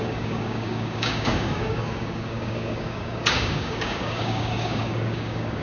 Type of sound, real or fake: fake